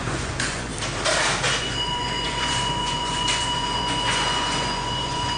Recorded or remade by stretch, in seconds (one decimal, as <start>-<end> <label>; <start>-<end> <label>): 0.0-0.7 remade; 0.7-1.6 recorded; 1.6-5.4 remade